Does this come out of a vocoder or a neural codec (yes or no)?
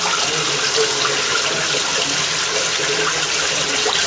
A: no